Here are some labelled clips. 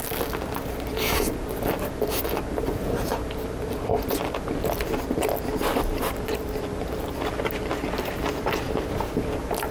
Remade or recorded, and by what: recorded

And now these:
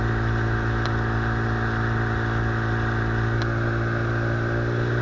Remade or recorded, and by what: recorded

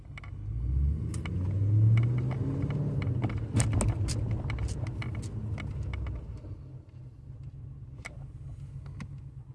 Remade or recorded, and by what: recorded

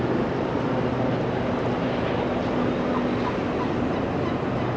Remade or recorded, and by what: recorded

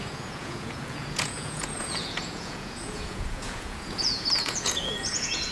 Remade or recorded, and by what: remade, vocoder, Vocos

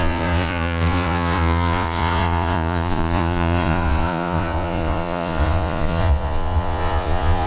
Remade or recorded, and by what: remade, vocoder, Vocos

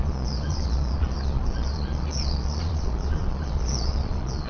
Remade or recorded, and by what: remade, vocoder, Vocos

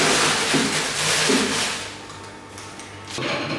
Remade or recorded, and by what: recorded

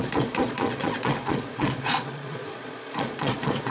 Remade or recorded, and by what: remade, vocoder, Vocos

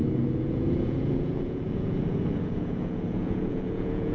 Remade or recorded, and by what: remade, vocoder, Vocos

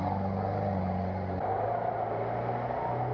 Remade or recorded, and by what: recorded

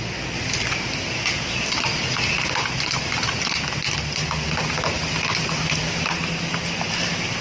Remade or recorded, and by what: recorded